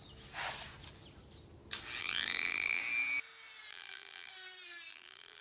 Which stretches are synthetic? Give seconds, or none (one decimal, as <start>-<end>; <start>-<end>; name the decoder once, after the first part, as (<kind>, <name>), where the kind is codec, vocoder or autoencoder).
2.0-2.8 (vocoder, BigVGAN v2); 3.7-4.3; 4.9-5.4